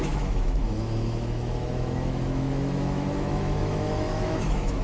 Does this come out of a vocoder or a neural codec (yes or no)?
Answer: yes